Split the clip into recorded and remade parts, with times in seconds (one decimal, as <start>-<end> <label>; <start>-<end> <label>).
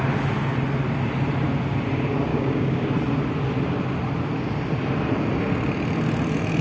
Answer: 0.0-2.3 recorded; 2.3-2.9 remade; 2.9-6.6 recorded